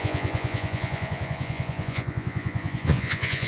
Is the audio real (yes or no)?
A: no